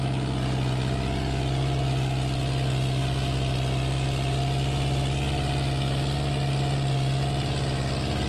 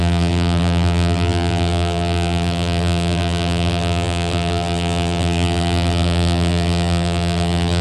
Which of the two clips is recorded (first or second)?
first